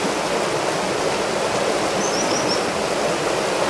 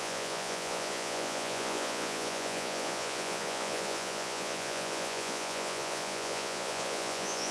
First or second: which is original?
first